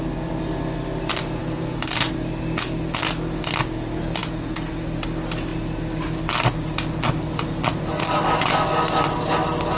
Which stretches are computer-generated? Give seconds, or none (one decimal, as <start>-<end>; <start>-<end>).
none